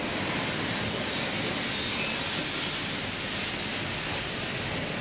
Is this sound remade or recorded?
recorded